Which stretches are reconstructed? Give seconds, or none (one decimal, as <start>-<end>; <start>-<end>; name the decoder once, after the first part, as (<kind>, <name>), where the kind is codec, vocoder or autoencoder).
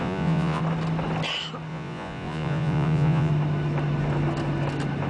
0.0-0.6 (vocoder, Vocos); 1.7-3.3